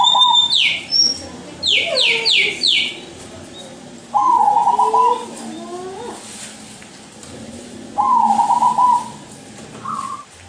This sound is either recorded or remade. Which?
recorded